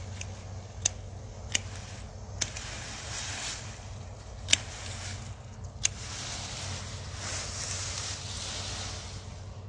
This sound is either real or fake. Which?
real